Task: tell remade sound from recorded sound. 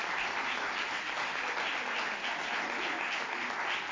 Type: recorded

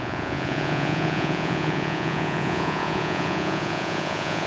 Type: remade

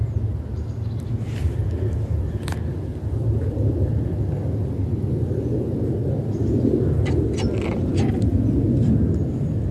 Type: recorded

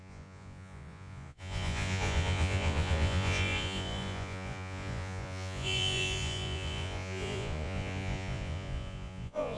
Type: remade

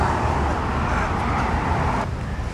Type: recorded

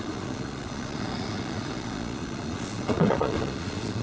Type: remade